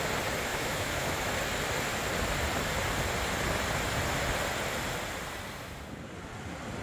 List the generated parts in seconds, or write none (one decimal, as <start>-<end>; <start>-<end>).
0.5-1.3